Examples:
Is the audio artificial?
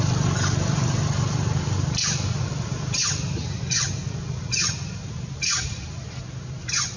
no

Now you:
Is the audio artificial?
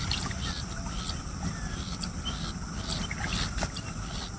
no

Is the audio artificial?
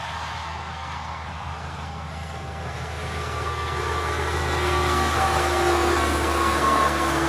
yes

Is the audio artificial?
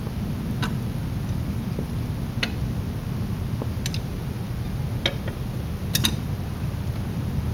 no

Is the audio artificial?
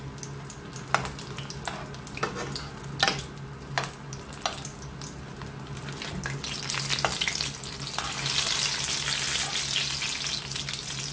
no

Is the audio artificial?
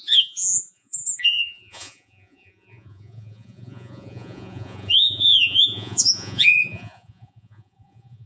yes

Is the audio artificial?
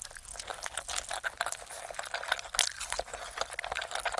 no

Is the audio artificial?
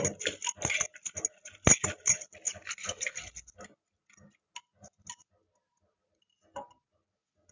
no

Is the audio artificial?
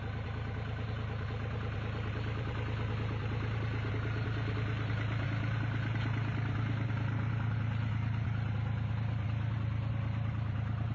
no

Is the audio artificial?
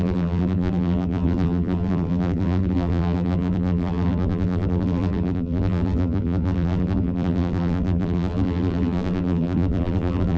yes